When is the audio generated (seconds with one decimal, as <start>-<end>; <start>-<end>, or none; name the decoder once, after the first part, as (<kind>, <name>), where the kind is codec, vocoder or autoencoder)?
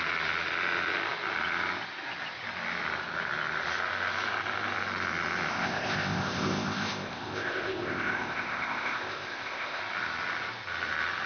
5.5-9.8 (codec, ZipCodec)